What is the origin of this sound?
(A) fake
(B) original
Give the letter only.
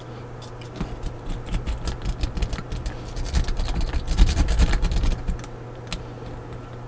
B